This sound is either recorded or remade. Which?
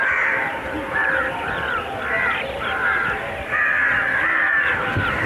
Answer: remade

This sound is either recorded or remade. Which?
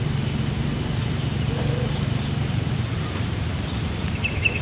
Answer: remade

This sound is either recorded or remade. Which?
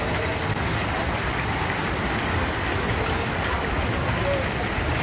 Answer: remade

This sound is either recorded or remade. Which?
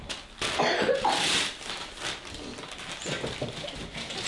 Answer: recorded